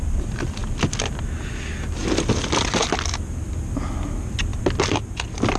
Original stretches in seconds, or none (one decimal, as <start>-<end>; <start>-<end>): 0.0-2.0; 3.2-5.6